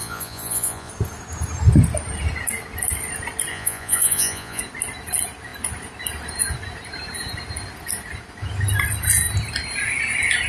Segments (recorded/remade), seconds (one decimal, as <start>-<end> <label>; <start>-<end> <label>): 0.0-0.9 remade; 0.9-3.5 recorded; 3.5-4.6 remade; 4.6-10.5 recorded